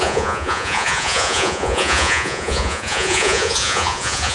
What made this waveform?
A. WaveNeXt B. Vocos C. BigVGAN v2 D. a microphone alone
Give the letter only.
B